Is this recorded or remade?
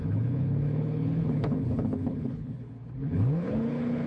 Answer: remade